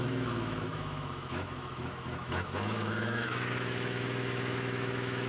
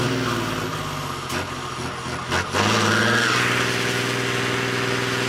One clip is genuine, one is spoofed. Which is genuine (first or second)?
second